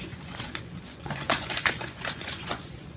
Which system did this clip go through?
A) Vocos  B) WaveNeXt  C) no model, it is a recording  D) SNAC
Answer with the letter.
A